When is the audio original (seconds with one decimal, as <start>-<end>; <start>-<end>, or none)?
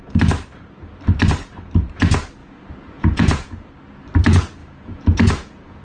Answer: 0.0-2.4; 3.7-4.6